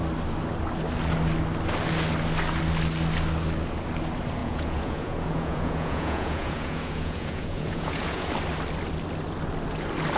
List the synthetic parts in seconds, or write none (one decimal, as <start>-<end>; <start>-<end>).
4.4-8.3